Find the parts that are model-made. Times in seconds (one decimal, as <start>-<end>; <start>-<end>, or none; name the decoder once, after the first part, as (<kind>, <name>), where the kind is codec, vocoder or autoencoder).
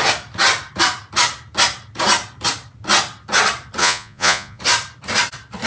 3.8-4.6 (vocoder, Vocos)